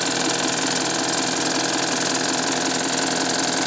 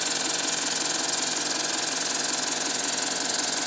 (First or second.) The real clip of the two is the first